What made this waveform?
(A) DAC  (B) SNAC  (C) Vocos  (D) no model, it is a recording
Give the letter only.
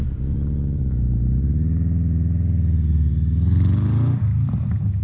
D